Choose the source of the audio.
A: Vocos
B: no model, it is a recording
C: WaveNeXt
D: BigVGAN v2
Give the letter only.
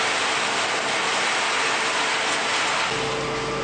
B